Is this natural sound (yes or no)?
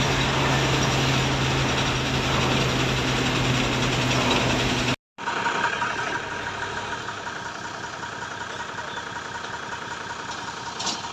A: yes